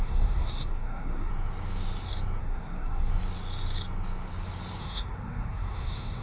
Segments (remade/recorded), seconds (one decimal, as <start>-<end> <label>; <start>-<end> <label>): 0.0-1.3 remade; 1.3-2.4 recorded; 2.4-3.1 remade; 3.1-4.8 recorded; 4.8-6.2 remade